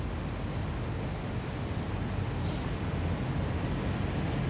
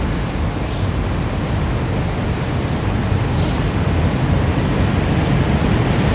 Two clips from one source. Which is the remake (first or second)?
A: second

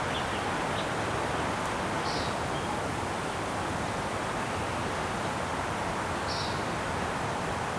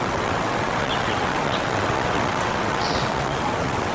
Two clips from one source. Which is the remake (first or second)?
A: second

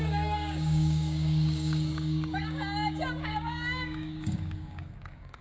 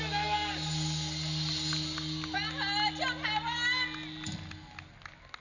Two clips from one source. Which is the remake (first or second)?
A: first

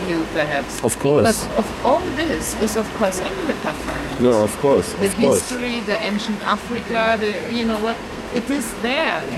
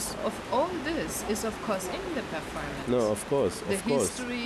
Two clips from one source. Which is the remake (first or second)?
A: first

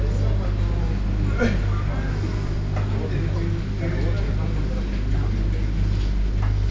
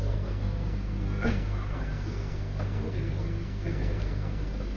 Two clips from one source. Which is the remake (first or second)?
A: second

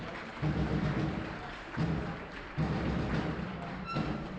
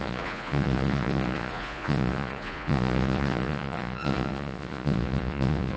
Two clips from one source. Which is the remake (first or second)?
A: second